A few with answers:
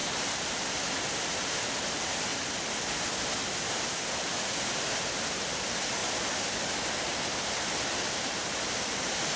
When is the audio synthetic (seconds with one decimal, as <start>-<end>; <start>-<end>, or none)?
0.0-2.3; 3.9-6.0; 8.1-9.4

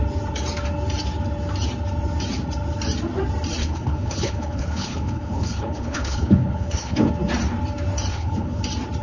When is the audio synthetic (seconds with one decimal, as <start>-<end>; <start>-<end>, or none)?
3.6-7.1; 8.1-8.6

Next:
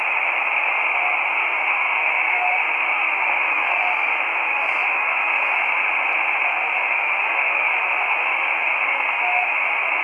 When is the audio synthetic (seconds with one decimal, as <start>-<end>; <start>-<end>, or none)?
1.4-5.7; 6.6-10.0

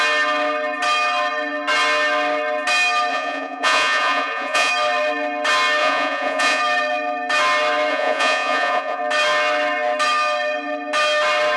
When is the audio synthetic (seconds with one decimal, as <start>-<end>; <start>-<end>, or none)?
3.1-4.7; 5.8-6.6; 7.9-9.0

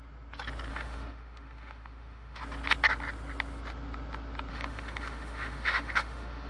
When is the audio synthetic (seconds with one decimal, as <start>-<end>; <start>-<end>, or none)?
0.7-2.4; 4.5-6.5